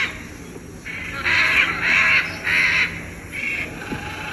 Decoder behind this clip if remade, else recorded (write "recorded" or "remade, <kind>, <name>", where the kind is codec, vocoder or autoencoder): recorded